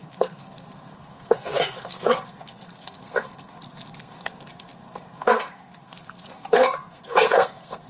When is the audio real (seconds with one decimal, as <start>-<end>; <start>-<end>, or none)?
none